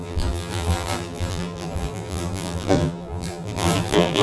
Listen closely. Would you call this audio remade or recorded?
remade